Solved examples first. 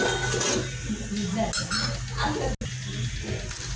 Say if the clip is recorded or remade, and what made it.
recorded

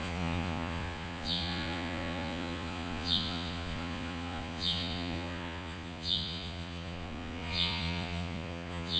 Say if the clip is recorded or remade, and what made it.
remade, vocoder, Vocos